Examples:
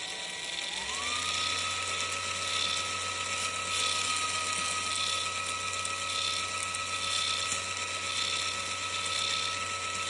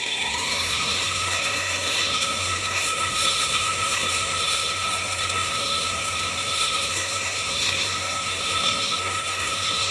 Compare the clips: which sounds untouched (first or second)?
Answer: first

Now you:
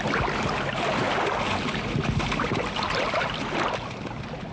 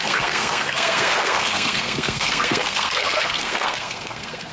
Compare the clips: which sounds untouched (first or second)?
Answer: first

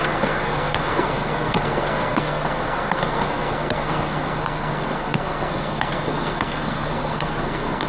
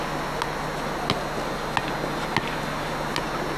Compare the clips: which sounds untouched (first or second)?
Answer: second